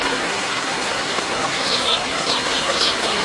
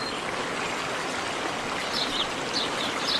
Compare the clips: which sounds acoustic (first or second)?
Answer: second